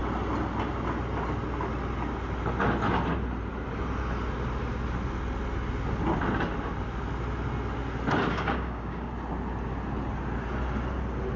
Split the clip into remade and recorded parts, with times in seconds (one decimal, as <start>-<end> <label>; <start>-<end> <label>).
0.0-8.3 recorded; 8.3-9.1 remade; 9.1-11.4 recorded